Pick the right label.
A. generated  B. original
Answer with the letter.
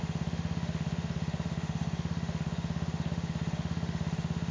A